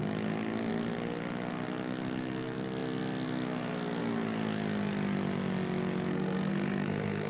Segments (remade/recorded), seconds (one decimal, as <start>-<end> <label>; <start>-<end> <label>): 0.0-6.1 recorded; 6.1-7.3 remade